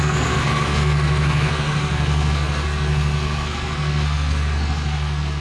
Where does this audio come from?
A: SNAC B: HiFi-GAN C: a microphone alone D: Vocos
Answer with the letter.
A